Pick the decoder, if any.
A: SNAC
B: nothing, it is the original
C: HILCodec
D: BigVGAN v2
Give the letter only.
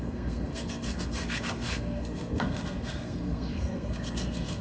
A